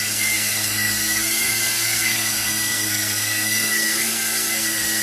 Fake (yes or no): yes